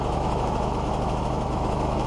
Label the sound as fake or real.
fake